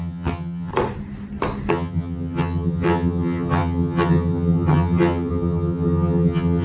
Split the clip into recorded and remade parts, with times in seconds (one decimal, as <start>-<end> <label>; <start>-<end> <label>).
0.0-0.7 remade; 0.7-1.7 recorded; 1.7-6.6 remade